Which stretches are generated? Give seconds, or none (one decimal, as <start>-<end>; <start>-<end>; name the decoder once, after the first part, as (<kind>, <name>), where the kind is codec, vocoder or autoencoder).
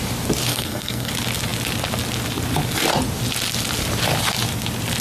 0.5-1.1 (codec, SNAC)